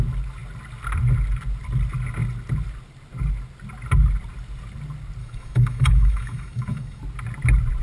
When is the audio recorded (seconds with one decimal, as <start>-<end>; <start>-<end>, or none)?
0.0-5.2; 7.0-7.8